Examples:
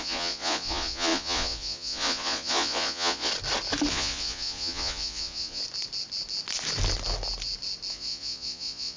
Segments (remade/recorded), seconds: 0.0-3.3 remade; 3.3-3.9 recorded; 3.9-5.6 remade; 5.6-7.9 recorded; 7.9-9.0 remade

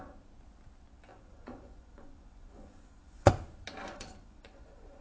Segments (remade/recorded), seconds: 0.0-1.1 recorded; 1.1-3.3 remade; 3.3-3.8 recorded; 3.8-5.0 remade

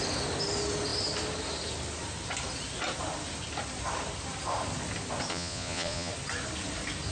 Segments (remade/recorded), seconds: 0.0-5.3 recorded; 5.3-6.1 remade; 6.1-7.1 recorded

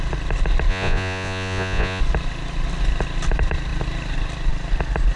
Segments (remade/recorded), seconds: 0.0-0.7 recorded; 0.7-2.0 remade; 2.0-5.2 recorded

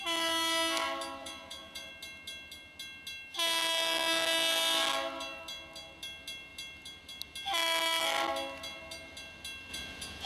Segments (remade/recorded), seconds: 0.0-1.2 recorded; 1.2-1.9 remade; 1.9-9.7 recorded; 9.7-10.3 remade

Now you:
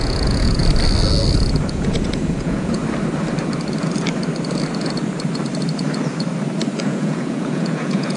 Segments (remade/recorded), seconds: 0.0-0.6 remade; 0.6-1.7 recorded; 1.7-2.8 remade; 2.8-6.8 recorded; 6.8-8.2 remade

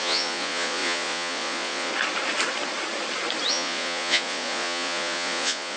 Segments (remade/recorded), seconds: 0.0-1.9 remade; 1.9-3.5 recorded; 3.5-5.8 remade